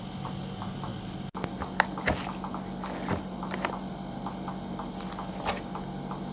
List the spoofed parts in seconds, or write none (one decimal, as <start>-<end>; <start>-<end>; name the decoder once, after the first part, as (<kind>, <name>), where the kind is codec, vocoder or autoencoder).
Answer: none